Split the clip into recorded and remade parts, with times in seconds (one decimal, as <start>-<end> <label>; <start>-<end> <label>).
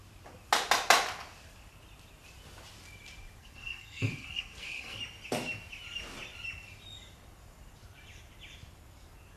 0.0-3.4 recorded; 3.4-5.0 remade; 5.0-9.4 recorded